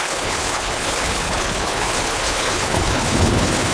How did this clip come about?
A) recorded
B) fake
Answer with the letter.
B